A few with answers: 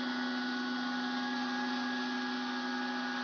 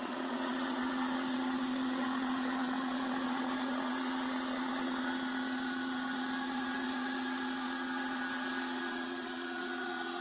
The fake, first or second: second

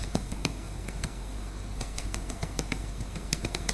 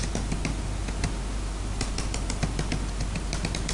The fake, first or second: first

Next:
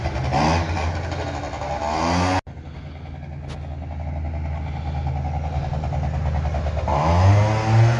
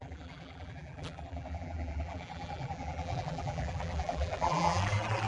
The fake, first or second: second